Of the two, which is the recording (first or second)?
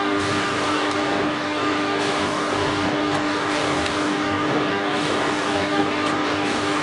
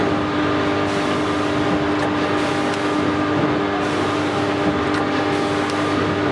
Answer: second